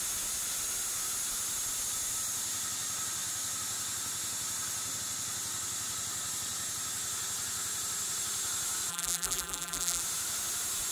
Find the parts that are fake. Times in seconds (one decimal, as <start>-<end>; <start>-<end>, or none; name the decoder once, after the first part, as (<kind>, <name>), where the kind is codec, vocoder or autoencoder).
8.9-10.0 (vocoder, BigVGAN v2)